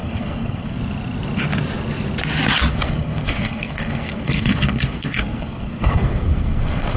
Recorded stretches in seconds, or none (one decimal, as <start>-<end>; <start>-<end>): 0.8-2.7